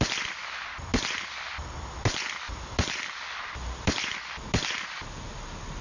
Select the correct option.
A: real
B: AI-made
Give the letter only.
A